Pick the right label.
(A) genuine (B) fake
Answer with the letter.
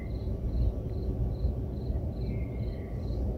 A